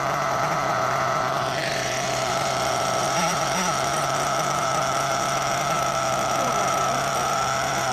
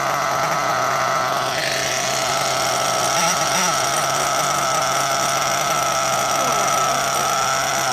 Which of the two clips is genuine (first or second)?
second